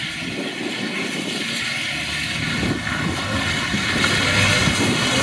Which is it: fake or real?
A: real